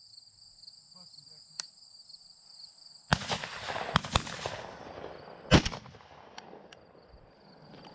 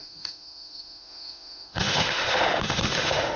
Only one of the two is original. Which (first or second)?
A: first